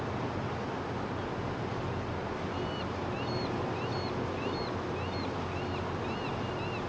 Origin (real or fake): real